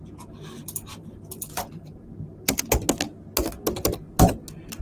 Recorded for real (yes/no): yes